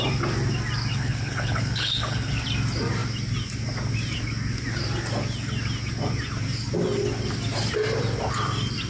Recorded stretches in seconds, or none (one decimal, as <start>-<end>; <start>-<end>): 0.0-0.9; 2.3-8.9